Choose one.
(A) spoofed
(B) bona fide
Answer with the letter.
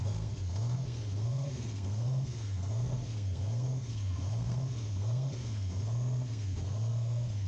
A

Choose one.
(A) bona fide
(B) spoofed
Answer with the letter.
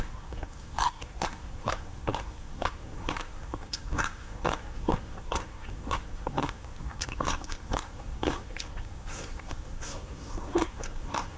B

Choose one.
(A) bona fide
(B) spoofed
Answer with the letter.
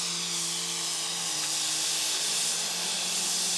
A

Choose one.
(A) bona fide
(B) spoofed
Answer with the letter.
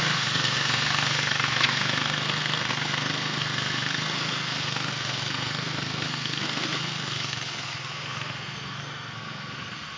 B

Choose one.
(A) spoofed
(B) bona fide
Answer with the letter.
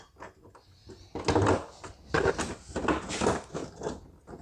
B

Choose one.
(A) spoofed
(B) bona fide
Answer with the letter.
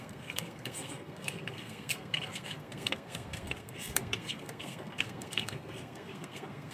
A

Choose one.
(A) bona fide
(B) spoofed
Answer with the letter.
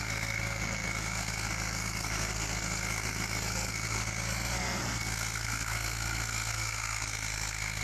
B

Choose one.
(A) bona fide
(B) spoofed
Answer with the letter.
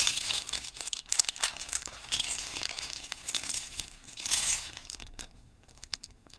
B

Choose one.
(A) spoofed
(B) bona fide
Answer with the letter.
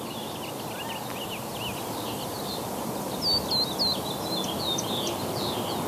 B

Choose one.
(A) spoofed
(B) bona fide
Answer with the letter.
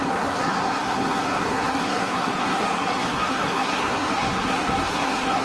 A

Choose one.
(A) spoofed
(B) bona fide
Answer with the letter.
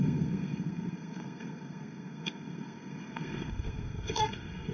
A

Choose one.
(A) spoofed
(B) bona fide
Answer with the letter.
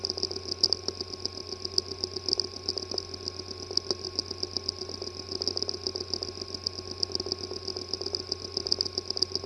B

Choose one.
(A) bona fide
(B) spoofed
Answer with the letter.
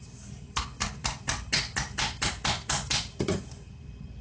A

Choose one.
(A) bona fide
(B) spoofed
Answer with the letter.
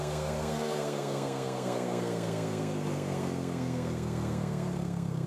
B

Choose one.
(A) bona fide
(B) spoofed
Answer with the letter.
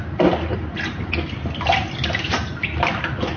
A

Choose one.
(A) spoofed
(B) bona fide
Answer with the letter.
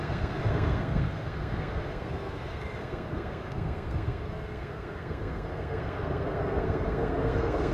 A